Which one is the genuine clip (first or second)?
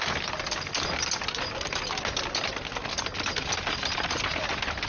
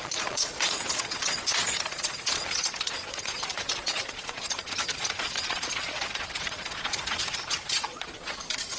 first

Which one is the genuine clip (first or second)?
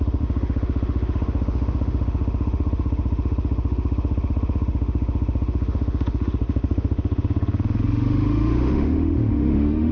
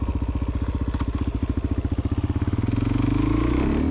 second